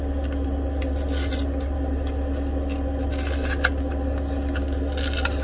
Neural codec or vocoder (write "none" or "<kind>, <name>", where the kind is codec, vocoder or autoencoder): none